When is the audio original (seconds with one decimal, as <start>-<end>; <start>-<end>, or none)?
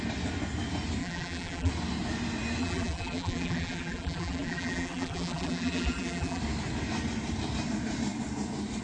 0.0-1.0; 1.7-2.6; 6.4-8.8